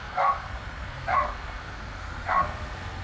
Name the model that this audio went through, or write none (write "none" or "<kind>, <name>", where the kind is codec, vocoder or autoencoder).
codec, SNAC